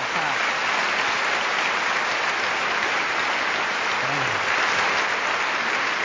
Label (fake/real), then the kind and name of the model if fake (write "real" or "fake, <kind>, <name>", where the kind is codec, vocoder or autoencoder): real